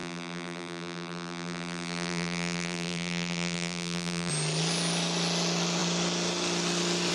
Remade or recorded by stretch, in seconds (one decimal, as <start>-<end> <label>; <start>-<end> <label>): 0.0-4.3 remade; 4.3-7.1 recorded